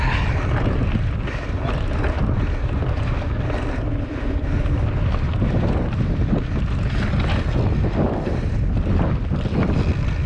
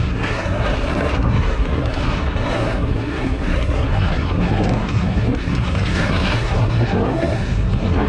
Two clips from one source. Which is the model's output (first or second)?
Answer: second